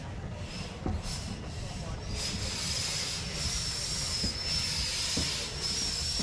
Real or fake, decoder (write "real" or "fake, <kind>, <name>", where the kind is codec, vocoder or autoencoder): real